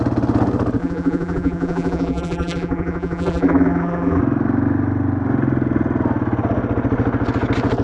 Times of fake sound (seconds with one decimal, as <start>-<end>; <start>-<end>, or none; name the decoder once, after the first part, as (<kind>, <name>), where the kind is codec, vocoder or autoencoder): 0.8-4.2 (vocoder, BigVGAN v2)